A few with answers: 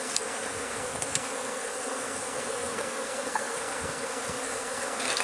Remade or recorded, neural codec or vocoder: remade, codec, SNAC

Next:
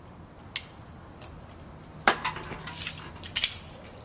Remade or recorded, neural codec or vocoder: recorded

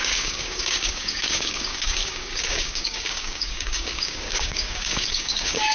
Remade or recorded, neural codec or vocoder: remade, codec, DAC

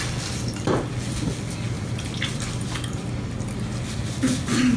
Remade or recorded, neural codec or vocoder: recorded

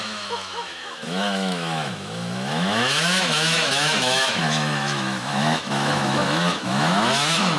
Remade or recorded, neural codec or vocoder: remade, autoencoder, DAC-VAE